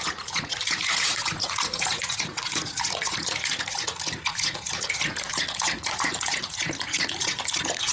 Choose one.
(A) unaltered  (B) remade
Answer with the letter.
B